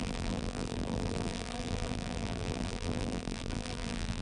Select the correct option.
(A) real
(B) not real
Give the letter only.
B